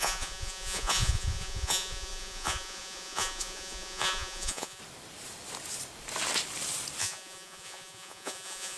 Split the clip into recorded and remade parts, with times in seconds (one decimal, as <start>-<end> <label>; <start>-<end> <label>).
0.0-4.8 remade; 4.8-7.0 recorded; 7.0-8.8 remade